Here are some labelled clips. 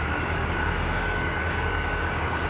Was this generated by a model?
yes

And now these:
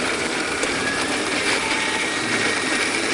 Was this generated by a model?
yes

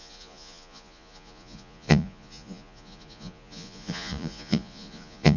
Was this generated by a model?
yes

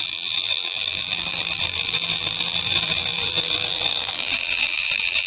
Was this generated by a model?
yes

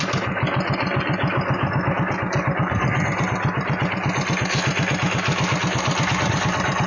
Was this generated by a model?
no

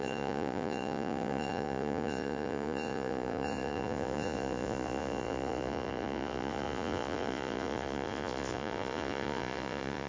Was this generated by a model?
yes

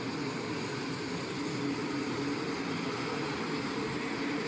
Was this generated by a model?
yes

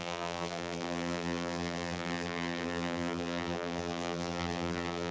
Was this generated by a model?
yes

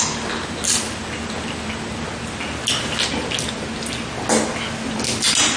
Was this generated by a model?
no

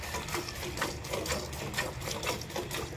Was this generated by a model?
no